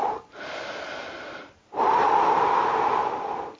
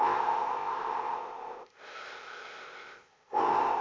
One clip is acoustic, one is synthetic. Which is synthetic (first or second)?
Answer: second